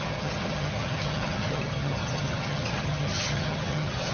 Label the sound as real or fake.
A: fake